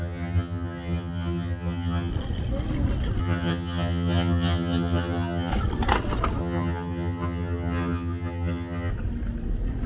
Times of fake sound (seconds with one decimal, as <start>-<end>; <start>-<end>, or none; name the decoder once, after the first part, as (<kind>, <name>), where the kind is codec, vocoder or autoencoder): 0.0-2.1 (vocoder, HiFi-GAN); 3.2-5.5; 6.4-8.9

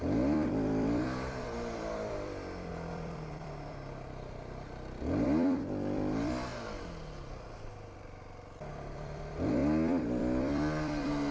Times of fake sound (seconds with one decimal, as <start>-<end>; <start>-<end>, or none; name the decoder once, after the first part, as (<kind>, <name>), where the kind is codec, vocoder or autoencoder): 0.0-6.5 (vocoder, BigVGAN v2); 8.7-11.3

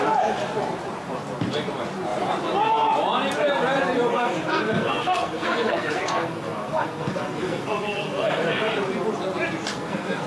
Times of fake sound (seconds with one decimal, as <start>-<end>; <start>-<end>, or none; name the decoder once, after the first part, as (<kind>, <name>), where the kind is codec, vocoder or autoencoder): 4.1-8.7 (codec, SNAC); 9.7-10.3

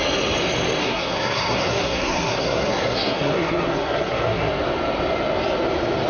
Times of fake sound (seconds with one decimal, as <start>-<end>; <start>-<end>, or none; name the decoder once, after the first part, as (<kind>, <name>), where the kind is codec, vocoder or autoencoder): 0.8-4.5 (codec, SNAC)

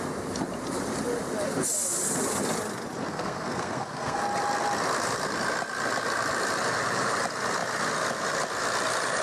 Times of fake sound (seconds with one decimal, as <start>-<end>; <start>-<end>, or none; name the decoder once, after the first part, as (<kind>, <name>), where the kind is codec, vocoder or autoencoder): 3.1-4.2 (codec, SNAC)

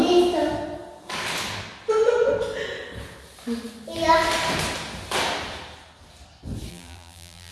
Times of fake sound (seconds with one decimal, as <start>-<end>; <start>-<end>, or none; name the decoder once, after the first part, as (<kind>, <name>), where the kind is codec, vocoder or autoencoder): 6.7-7.5 (vocoder, BigVGAN v2)

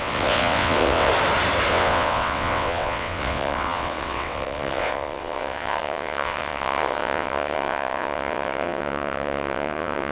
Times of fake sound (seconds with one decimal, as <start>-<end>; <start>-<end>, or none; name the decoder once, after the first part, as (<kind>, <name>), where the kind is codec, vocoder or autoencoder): 0.0-1.1 (vocoder, WaveNeXt); 1.7-10.1